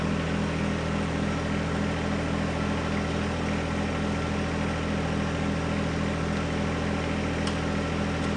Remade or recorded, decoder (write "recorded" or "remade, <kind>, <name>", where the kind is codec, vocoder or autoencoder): recorded